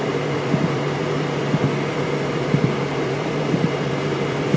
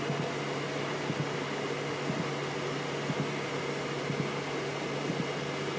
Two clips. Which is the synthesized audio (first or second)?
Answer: first